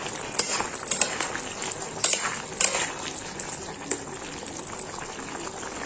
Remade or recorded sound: recorded